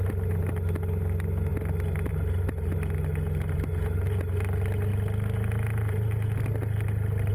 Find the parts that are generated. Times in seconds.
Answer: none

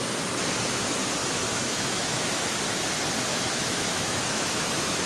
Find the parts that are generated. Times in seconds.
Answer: 1.2-2.6 (autoencoder, DAC-VAE); 3.3-5.1

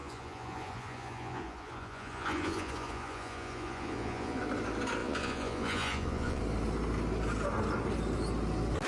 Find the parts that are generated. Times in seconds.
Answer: 0.0-4.4 (vocoder, Vocos); 5.0-6.4

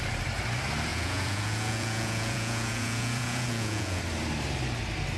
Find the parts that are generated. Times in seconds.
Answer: 0.9-4.0 (vocoder, Vocos)

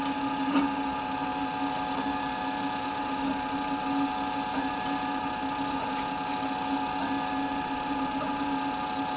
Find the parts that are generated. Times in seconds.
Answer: none

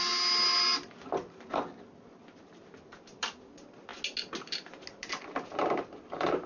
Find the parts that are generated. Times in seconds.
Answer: none

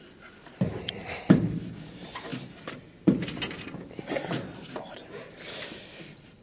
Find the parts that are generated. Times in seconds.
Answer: none

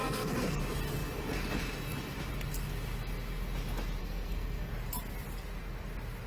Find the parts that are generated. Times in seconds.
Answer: 0.0-0.6 (codec, SNAC); 4.0-4.7